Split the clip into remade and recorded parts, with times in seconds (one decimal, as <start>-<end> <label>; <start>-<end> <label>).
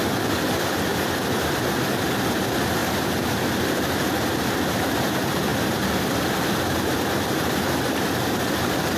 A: 0.0-0.9 remade; 0.9-2.3 recorded; 2.3-9.0 remade